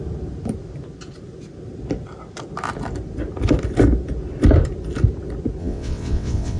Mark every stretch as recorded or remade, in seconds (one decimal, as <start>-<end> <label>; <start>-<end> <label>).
0.0-5.6 recorded; 5.6-6.6 remade